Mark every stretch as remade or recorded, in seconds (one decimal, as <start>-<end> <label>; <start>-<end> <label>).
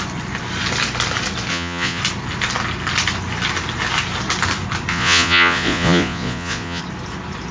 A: 0.0-1.5 recorded; 1.5-2.0 remade; 2.0-4.9 recorded; 4.9-6.8 remade; 6.8-7.5 recorded